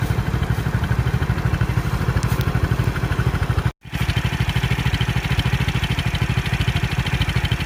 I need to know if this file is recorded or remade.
recorded